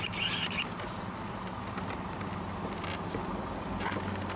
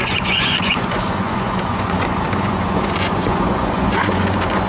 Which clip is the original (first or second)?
first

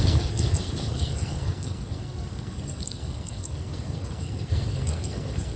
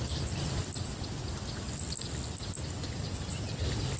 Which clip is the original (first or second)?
second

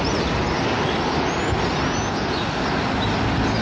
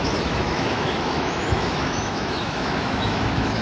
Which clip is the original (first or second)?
first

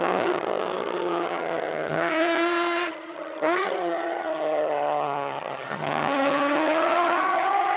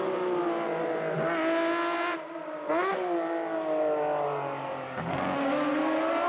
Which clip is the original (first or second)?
second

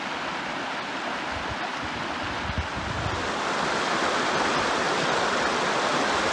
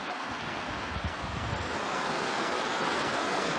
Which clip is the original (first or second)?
first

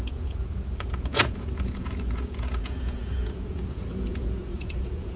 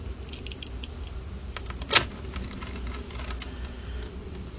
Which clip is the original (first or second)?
second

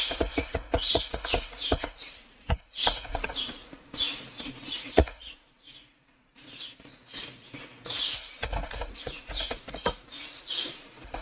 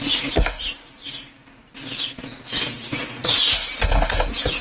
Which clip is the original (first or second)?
second